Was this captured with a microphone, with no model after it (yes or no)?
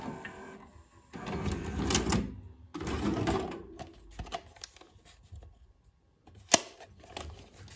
yes